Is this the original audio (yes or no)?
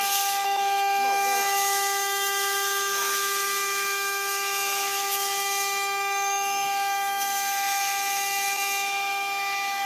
no